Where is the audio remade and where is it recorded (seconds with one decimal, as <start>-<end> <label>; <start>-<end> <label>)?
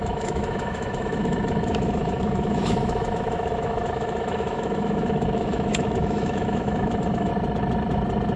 0.0-7.3 remade; 7.3-8.4 recorded